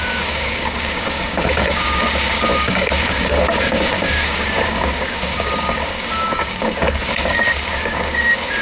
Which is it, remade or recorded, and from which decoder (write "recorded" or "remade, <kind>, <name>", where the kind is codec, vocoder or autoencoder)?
remade, codec, DAC